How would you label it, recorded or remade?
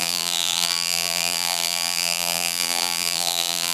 remade